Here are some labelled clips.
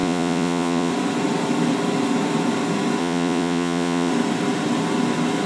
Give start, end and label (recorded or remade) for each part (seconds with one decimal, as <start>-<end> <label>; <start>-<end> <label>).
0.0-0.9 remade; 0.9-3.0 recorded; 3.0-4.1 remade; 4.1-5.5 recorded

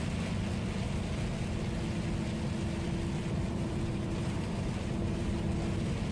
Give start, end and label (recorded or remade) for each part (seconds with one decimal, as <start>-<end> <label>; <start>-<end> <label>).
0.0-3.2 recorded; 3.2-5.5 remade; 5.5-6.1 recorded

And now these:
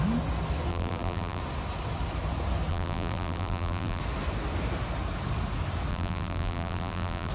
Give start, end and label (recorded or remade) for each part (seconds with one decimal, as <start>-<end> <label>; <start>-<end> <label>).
0.0-0.7 recorded; 0.7-1.4 remade; 1.4-2.7 recorded; 2.7-4.0 remade; 4.0-5.9 recorded; 5.9-7.3 remade

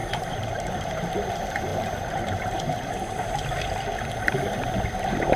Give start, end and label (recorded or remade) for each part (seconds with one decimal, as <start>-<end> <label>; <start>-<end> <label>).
0.0-0.7 remade; 0.7-1.7 recorded; 1.7-2.9 remade; 2.9-5.4 recorded

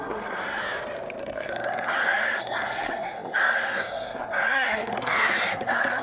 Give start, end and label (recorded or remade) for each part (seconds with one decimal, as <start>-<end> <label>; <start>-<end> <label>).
0.0-0.6 remade; 0.6-1.2 recorded; 1.2-6.0 remade

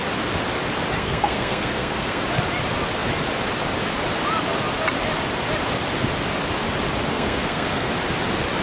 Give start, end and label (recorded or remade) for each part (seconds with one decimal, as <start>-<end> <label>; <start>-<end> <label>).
0.0-1.0 recorded; 1.0-2.2 remade; 2.2-7.1 recorded; 7.1-7.9 remade; 7.9-8.6 recorded